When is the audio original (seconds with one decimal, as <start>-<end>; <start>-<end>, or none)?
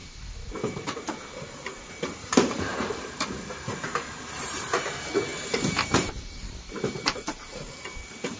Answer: 2.7-3.3